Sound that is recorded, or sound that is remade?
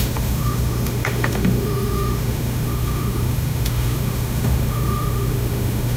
remade